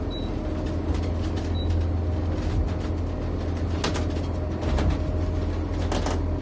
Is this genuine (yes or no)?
yes